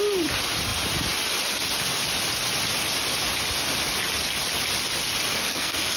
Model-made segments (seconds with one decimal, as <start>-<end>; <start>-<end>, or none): 5.3-6.0